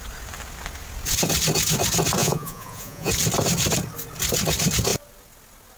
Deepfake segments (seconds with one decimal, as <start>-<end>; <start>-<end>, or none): 2.2-3.1